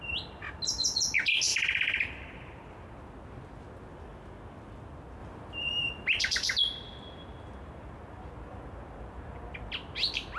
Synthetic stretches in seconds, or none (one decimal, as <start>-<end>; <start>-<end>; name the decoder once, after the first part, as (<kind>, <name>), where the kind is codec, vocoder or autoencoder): 1.5-2.9 (vocoder, BigVGAN v2)